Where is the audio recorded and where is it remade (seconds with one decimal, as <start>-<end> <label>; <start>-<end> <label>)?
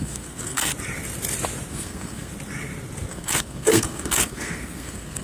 0.0-0.7 remade; 0.7-1.7 recorded; 1.7-2.3 remade; 2.3-3.1 recorded; 3.1-5.2 remade